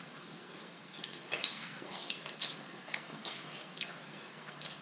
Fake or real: fake